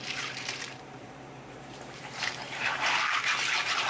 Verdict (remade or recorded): remade